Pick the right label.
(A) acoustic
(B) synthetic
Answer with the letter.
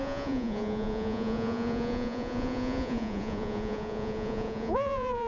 B